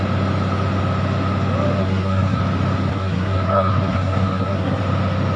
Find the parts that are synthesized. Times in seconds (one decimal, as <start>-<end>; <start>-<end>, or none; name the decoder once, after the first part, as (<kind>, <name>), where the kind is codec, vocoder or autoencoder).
1.8-2.4 (codec, SNAC); 2.9-4.8